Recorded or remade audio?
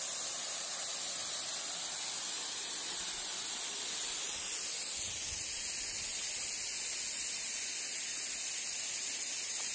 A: recorded